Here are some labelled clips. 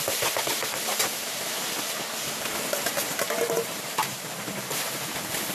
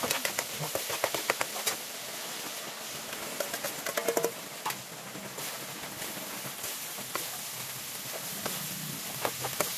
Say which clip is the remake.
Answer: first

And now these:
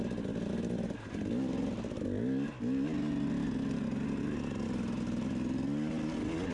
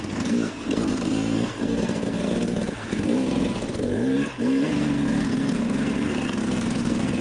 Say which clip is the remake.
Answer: second